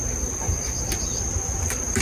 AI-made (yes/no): no